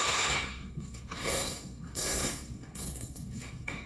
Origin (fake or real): fake